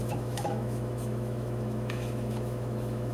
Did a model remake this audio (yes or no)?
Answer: yes